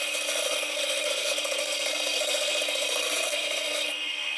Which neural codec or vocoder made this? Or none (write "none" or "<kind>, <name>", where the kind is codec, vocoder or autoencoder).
codec, SNAC